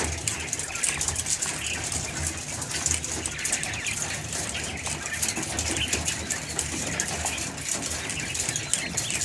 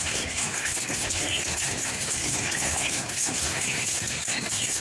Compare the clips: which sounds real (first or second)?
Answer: first